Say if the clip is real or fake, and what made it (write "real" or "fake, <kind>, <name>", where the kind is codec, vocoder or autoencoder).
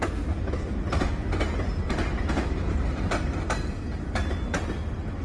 real